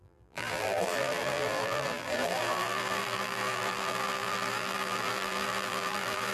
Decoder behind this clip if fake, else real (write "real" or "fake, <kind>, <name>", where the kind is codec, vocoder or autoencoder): fake, vocoder, BigVGAN v2